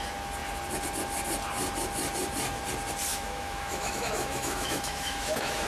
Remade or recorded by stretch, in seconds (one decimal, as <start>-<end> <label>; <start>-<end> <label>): 0.0-3.1 recorded; 3.1-5.7 remade